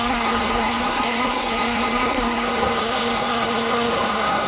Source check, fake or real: fake